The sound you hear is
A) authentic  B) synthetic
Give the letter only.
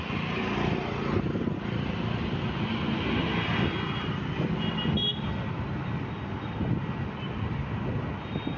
A